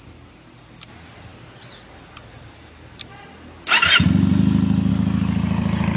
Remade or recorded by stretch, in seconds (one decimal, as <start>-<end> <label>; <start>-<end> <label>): 0.0-6.0 recorded

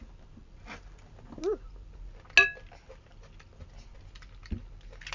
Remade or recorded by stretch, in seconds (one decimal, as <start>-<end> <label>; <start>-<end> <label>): 0.0-5.1 recorded